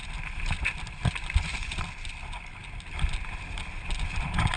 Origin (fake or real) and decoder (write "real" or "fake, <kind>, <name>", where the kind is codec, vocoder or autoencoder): real